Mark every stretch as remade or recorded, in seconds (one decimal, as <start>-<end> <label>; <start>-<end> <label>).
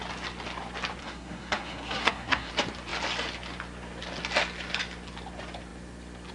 0.0-1.0 recorded; 1.0-2.5 remade; 2.5-6.3 recorded